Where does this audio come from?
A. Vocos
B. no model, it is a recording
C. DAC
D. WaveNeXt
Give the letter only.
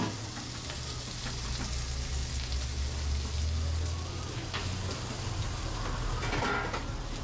B